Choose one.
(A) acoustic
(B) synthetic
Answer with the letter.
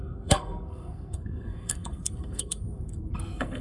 B